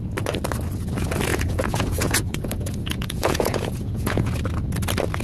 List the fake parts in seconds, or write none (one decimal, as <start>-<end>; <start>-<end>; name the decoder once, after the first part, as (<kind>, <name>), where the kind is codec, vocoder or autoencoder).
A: 1.3-4.3 (vocoder, Vocos)